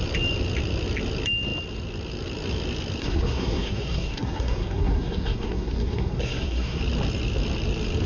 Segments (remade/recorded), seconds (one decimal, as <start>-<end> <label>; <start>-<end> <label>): 0.0-3.0 recorded; 3.0-6.8 remade; 6.8-8.1 recorded